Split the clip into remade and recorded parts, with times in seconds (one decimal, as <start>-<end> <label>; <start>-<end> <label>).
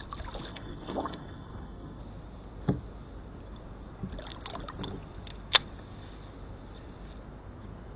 0.0-0.5 recorded; 0.5-2.0 remade; 2.0-8.0 recorded